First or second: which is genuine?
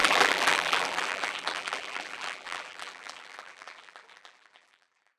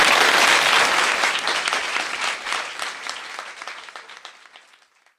second